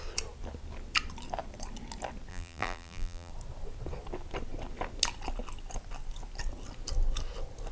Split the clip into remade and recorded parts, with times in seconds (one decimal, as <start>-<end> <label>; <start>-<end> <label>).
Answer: 0.0-2.3 recorded; 2.3-3.3 remade; 3.3-7.7 recorded